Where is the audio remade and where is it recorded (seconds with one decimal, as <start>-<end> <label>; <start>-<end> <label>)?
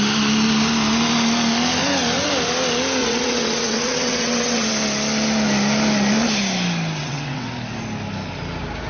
0.0-3.0 recorded; 3.0-4.7 remade; 4.7-7.0 recorded; 7.0-7.5 remade; 7.5-8.9 recorded